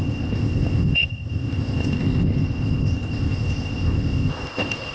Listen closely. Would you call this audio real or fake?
fake